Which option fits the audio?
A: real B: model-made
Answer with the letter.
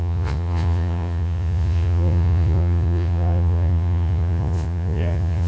B